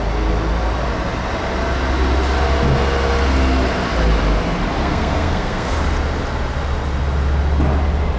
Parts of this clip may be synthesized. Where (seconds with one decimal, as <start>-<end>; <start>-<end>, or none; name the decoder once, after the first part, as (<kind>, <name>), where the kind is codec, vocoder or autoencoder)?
4.8-5.8 (codec, SNAC)